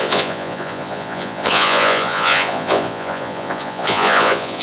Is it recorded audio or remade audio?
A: remade